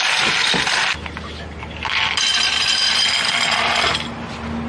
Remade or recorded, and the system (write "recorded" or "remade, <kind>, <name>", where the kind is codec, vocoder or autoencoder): remade, vocoder, BigVGAN v2